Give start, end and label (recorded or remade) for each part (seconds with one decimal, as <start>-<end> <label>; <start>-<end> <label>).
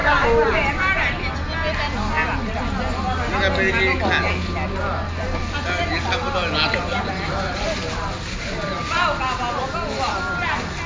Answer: 0.0-10.9 recorded